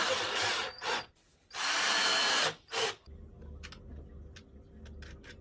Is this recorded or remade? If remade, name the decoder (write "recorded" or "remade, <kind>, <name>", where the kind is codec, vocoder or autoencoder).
recorded